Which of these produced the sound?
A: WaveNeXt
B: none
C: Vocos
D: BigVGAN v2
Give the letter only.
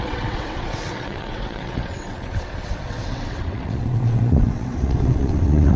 A